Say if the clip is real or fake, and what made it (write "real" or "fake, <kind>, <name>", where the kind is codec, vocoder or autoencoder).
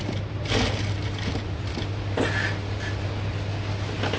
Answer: real